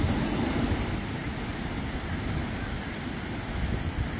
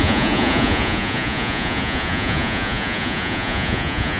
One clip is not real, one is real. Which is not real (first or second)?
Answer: second